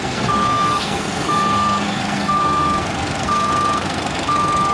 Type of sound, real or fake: fake